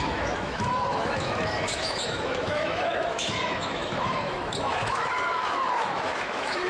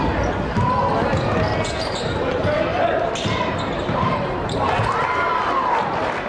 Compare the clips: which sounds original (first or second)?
second